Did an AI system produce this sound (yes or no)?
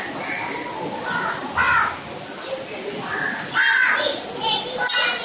no